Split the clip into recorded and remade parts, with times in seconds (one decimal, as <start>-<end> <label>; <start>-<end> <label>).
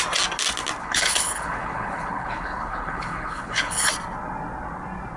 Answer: 0.0-0.8 recorded; 0.8-3.9 remade; 3.9-5.2 recorded